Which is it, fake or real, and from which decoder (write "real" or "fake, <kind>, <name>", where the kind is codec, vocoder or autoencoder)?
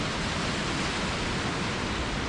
real